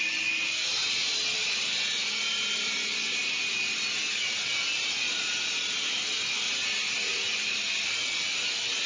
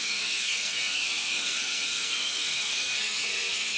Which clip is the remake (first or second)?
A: second